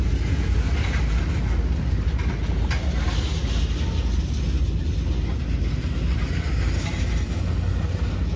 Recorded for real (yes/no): yes